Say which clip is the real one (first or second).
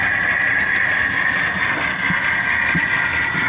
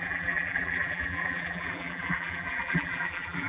first